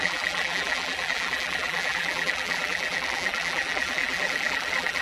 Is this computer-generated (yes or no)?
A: yes